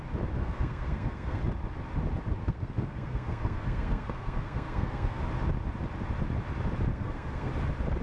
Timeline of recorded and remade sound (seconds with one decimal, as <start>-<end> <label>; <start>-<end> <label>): 0.0-0.4 recorded; 0.4-1.4 remade; 1.4-2.4 recorded; 2.4-5.2 remade; 5.2-6.9 recorded; 6.9-7.5 remade; 7.5-8.0 recorded